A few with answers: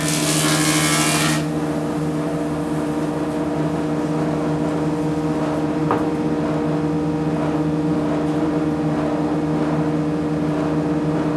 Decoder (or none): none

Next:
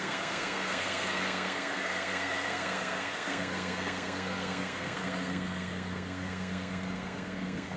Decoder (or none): codec, SNAC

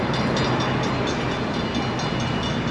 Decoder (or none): none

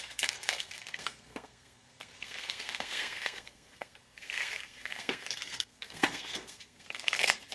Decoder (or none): codec, SNAC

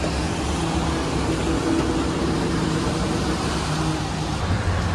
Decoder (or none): none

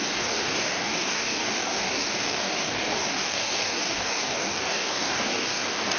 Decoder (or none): codec, DAC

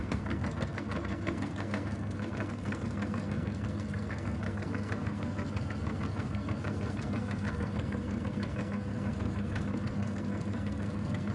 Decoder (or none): codec, SNAC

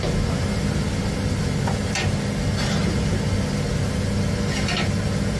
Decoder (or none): none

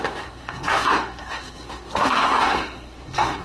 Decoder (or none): codec, SNAC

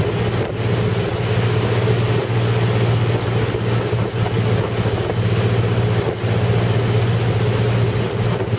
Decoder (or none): none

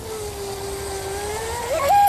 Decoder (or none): none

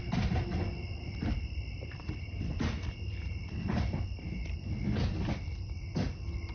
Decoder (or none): none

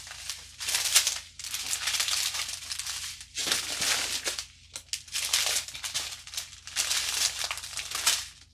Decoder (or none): none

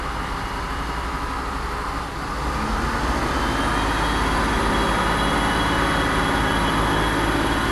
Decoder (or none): none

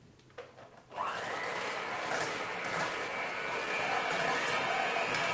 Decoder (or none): none